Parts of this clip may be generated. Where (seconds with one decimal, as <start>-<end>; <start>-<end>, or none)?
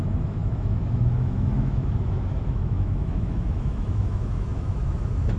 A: 0.0-5.4